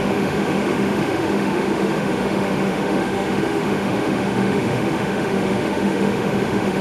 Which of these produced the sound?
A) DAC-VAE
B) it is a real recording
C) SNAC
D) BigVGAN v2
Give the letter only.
A